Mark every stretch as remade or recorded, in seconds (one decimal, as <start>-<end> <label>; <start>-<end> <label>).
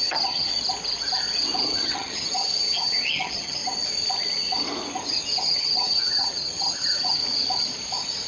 0.0-0.5 remade; 0.5-1.6 recorded; 1.6-3.6 remade; 3.6-5.4 recorded; 5.4-7.2 remade; 7.2-8.3 recorded